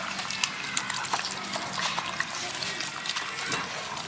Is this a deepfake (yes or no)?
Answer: no